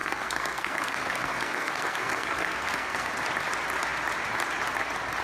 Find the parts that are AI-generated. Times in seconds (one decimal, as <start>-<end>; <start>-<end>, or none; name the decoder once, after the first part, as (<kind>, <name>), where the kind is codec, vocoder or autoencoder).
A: 0.0-3.1 (codec, SNAC)